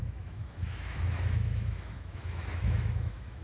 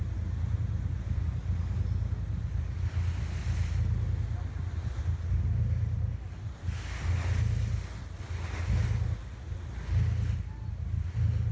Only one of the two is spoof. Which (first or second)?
first